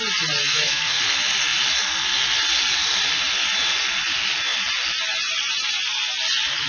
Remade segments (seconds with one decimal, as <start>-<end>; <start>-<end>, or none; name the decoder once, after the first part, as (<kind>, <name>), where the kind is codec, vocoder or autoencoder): 0.4-1.0 (codec, SNAC)